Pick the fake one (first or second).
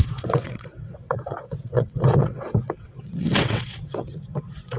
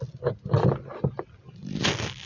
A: first